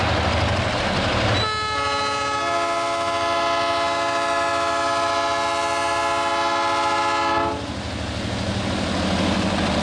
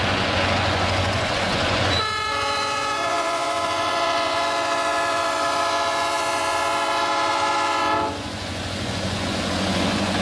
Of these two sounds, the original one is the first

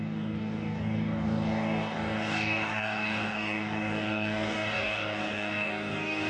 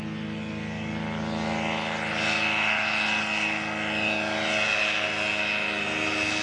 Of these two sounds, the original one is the second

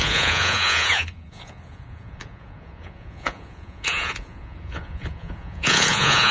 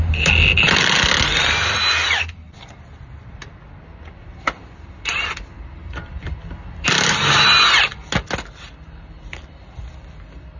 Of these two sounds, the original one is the second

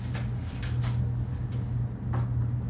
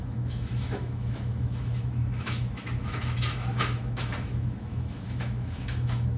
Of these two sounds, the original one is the first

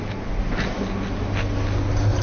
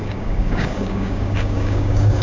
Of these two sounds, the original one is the first